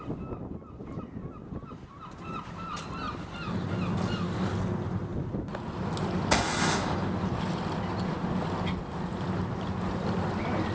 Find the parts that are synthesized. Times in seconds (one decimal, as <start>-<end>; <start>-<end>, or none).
none